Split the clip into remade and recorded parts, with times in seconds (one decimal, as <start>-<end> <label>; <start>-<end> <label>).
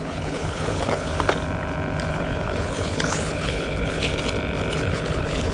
0.0-1.1 remade; 1.1-2.1 recorded; 2.1-4.1 remade; 4.1-4.7 recorded; 4.7-5.5 remade